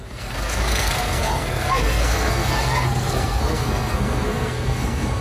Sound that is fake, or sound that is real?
fake